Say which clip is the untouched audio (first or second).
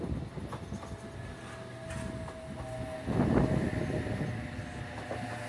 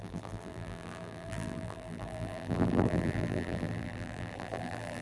first